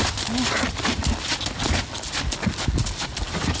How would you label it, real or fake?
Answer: real